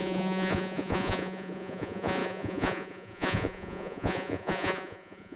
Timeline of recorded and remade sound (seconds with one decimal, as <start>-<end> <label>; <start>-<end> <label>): 0.0-5.4 remade